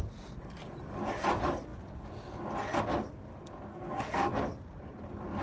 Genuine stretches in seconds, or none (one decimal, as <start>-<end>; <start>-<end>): 0.0-3.7; 4.3-5.4